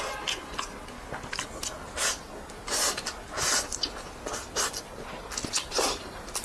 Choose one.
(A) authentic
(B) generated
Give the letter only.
A